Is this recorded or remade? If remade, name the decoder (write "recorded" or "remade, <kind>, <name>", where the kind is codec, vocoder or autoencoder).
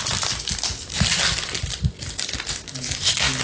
recorded